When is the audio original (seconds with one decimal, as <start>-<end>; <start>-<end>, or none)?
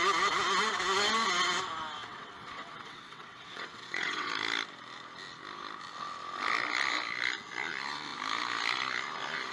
0.0-2.0; 4.3-9.5